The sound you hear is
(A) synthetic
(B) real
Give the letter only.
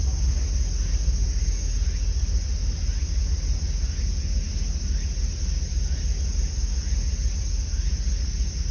B